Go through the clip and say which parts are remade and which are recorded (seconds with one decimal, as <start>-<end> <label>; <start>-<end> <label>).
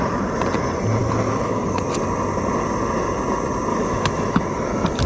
0.0-1.0 recorded; 1.0-1.6 remade; 1.6-3.7 recorded; 3.7-4.4 remade; 4.4-5.1 recorded